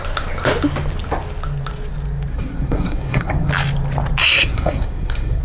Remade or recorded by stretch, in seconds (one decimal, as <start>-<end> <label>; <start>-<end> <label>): 0.0-2.3 recorded; 2.3-3.5 remade; 3.5-4.2 recorded; 4.2-5.4 remade